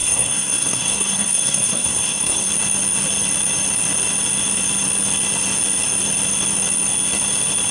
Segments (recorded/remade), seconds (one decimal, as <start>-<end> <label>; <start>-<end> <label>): 0.0-2.5 remade; 2.5-7.7 recorded